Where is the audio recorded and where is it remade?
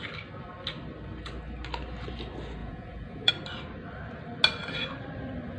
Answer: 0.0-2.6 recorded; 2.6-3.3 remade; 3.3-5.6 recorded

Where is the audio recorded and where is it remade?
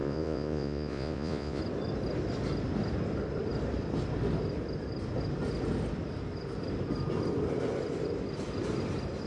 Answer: 0.0-1.6 remade; 1.6-9.3 recorded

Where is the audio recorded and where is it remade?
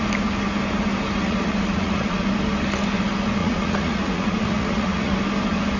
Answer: 0.0-1.2 recorded; 1.2-2.3 remade; 2.3-3.4 recorded; 3.4-5.2 remade; 5.2-5.8 recorded